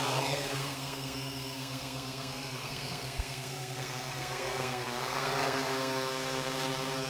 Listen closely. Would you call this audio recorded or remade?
remade